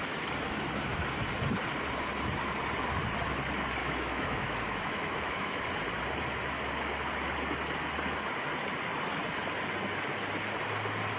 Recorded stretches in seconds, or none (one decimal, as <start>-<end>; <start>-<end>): 0.0-3.8; 5.6-11.2